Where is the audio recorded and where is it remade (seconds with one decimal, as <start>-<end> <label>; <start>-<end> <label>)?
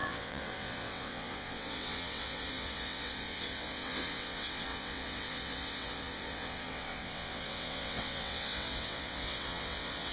0.0-10.1 remade